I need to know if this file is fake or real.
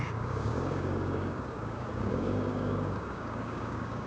fake